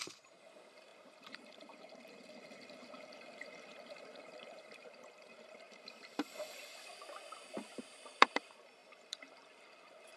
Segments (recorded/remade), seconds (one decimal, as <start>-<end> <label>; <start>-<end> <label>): 0.0-6.9 remade; 6.9-7.7 recorded; 7.7-10.2 remade